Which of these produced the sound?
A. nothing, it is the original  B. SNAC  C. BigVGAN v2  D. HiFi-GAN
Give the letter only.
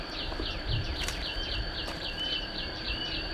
C